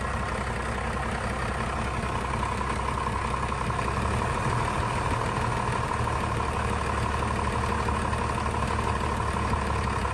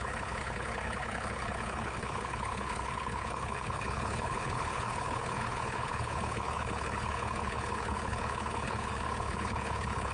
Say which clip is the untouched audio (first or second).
first